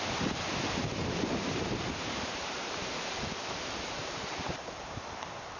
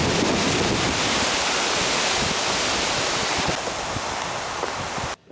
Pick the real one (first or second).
second